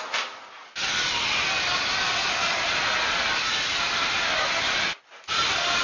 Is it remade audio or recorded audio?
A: recorded